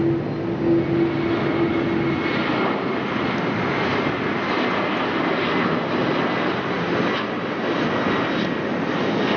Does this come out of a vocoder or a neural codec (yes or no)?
no